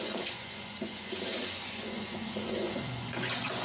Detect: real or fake fake